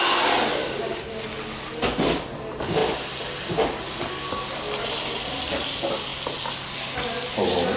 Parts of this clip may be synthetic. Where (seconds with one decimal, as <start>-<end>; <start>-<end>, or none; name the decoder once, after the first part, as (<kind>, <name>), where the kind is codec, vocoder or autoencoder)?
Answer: none